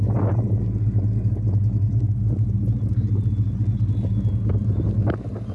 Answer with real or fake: real